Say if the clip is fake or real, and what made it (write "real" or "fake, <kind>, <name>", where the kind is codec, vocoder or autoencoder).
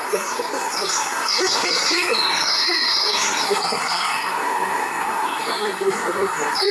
fake, codec, SNAC